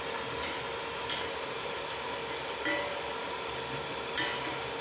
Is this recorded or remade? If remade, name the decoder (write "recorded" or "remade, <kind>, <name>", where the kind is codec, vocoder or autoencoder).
remade, vocoder, BigVGAN v2